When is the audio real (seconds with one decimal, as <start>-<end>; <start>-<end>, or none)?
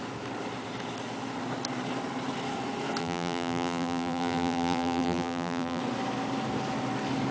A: 0.0-3.0; 5.8-7.3